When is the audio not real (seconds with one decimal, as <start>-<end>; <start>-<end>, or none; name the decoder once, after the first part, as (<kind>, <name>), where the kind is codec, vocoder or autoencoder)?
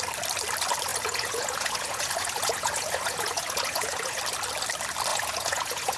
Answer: 0.9-4.2 (vocoder, Vocos); 5.1-6.0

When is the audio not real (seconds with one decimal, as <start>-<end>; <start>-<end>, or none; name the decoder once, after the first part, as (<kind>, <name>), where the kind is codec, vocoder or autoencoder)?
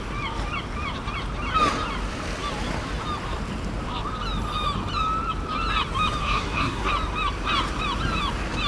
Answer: 6.2-6.9 (codec, SNAC)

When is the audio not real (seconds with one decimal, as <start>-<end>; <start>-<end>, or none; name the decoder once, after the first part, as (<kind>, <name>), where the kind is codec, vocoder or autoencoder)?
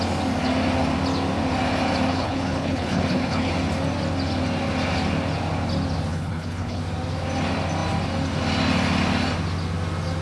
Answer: 2.1-3.5 (codec, HILCodec); 6.1-6.8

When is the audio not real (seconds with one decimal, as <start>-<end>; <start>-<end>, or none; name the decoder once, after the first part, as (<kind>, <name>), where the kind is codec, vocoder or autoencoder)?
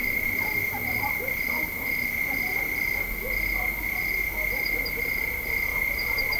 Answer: 0.0-1.1 (vocoder, BigVGAN v2); 5.7-6.4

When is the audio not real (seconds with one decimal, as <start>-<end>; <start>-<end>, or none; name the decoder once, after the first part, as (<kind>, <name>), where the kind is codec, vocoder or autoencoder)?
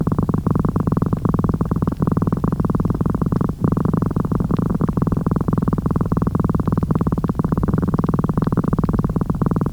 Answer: 4.7-5.8 (vocoder, BigVGAN v2)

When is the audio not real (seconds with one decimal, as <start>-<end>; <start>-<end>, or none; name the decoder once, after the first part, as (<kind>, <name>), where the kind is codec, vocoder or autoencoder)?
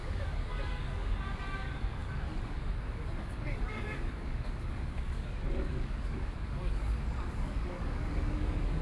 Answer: 0.0-8.8 (codec, DAC)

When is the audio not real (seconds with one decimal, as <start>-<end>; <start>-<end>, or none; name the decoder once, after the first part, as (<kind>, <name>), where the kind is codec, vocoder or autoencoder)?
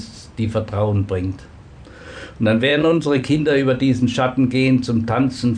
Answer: 2.7-3.4 (vocoder, Vocos)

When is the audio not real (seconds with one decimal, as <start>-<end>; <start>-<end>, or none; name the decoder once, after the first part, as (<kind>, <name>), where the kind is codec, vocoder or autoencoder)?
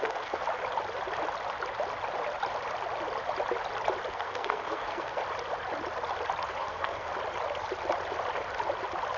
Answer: 0.0-0.4 (codec, SNAC); 4.1-5.2; 6.6-7.1